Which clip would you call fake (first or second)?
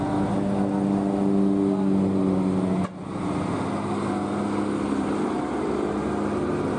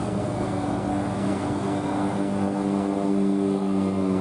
second